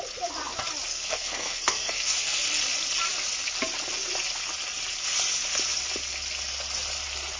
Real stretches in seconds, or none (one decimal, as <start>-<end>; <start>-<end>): 0.0-0.9; 2.5-7.4